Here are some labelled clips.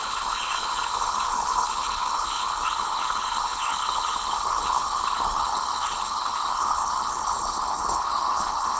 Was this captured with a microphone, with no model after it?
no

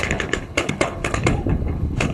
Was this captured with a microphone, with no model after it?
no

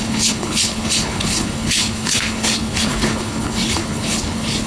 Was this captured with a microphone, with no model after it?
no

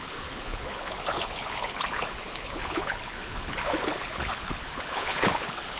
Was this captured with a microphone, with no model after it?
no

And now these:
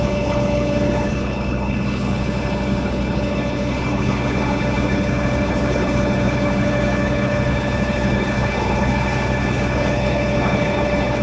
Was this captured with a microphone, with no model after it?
no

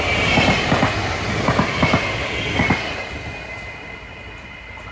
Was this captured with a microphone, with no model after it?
yes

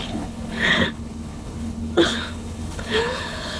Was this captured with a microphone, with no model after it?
no